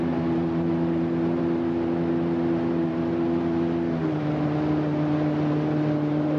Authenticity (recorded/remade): recorded